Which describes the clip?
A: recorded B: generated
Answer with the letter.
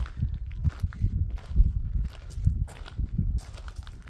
A